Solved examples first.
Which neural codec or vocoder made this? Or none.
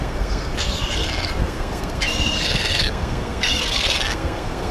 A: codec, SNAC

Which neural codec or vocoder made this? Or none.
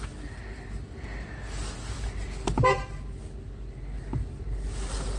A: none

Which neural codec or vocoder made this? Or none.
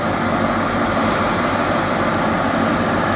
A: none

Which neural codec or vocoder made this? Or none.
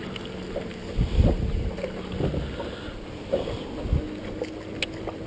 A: none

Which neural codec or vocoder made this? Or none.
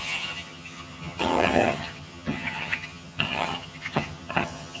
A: vocoder, HiFi-GAN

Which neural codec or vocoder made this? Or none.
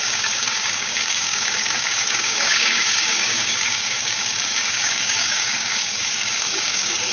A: codec, DAC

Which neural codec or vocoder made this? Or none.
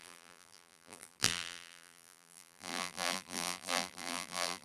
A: vocoder, BigVGAN v2